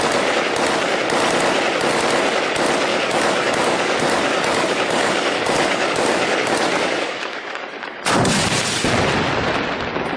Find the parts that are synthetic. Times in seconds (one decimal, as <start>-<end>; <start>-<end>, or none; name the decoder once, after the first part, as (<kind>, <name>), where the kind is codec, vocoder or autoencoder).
2.9-8.0 (codec, DAC)